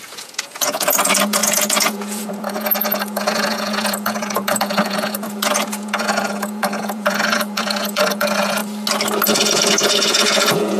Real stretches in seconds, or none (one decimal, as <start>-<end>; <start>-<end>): 8.6-9.3